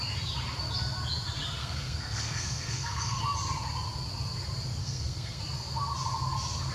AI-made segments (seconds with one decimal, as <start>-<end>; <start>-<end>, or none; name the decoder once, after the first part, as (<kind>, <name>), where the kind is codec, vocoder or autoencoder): 1.6-3.2 (codec, SNAC); 4.8-5.4